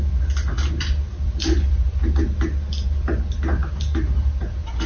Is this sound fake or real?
real